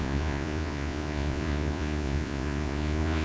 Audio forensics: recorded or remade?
remade